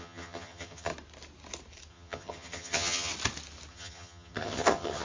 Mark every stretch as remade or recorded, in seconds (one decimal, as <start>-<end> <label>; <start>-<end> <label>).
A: 0.0-0.9 remade; 0.9-1.9 recorded; 1.9-3.1 remade; 3.1-3.7 recorded; 3.7-5.0 remade